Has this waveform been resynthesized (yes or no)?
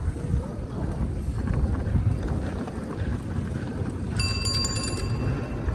no